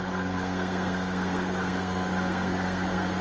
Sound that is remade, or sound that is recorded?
remade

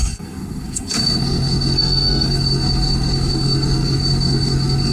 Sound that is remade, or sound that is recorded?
remade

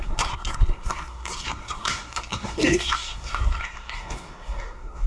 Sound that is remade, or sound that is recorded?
remade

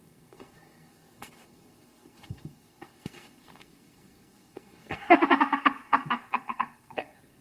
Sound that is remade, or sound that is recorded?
remade